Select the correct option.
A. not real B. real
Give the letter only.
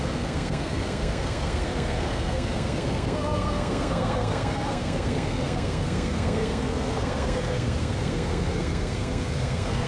A